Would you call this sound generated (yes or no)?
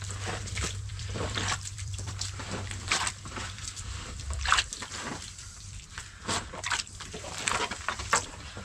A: yes